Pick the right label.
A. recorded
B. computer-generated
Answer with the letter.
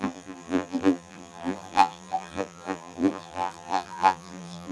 B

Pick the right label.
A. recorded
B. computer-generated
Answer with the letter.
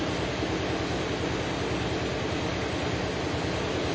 A